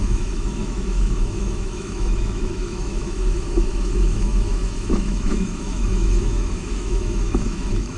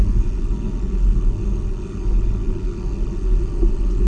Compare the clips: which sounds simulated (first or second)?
first